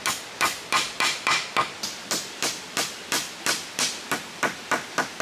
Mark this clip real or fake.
real